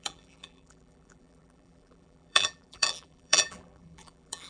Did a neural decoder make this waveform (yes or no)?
yes